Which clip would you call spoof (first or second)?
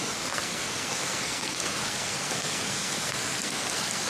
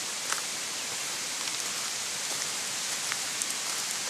first